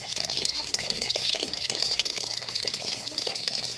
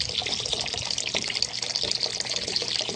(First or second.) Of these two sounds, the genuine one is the second